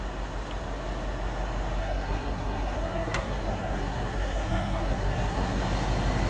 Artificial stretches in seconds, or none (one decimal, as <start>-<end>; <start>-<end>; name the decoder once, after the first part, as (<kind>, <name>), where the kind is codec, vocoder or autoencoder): 1.8-5.6 (codec, SNAC)